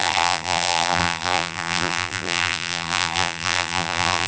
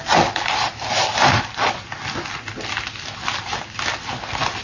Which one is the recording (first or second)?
second